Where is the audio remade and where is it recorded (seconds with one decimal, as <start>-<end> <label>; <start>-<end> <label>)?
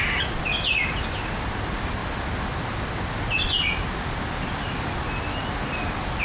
0.0-6.2 recorded